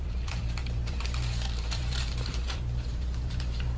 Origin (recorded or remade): remade